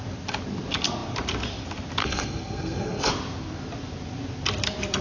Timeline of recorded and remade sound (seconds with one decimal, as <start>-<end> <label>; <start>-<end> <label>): 0.0-2.0 recorded; 2.0-3.1 remade; 3.1-5.0 recorded